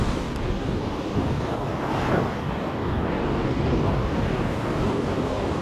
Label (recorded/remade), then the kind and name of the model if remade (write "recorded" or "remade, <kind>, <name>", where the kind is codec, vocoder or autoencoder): remade, codec, DAC